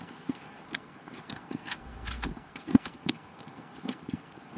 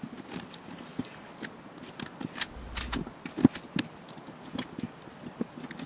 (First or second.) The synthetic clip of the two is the first